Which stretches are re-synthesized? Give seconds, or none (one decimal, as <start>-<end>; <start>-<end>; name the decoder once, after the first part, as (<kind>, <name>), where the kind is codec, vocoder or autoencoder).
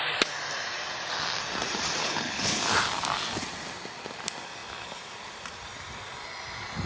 2.0-2.6 (codec, HILCodec)